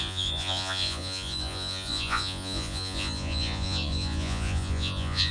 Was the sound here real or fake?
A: fake